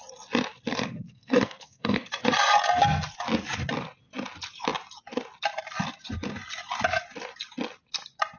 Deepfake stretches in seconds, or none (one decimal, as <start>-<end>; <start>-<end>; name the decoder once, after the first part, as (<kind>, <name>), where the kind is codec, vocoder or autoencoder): 0.7-2.1 (codec, SNAC)